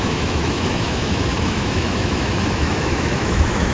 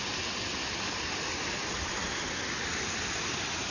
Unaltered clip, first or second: second